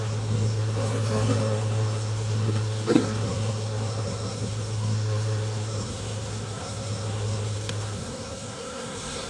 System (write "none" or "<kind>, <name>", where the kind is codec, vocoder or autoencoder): codec, SNAC